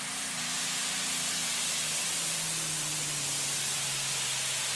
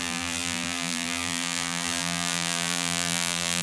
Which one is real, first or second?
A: first